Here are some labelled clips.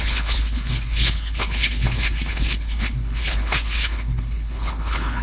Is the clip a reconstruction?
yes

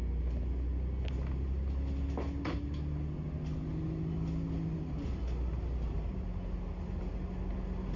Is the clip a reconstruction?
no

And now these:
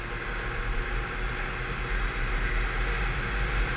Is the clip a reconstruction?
no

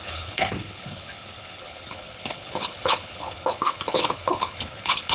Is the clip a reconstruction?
yes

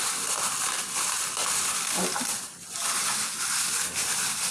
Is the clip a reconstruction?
no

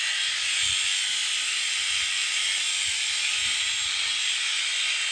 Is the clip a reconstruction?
no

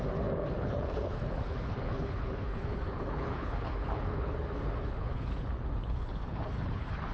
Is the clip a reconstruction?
yes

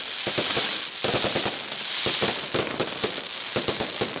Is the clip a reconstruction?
no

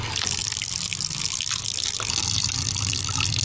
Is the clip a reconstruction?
no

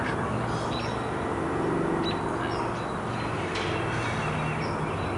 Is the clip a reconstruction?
no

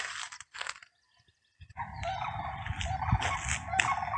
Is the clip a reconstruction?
no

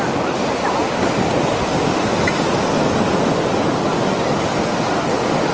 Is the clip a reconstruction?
no